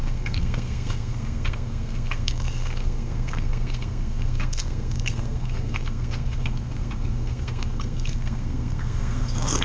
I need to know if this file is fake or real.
fake